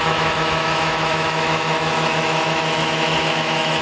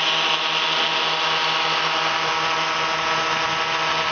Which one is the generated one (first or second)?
first